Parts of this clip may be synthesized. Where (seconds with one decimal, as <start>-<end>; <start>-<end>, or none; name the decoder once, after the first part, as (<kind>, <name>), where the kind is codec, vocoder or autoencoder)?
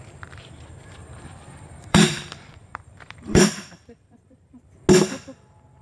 1.0-4.5 (vocoder, BigVGAN v2)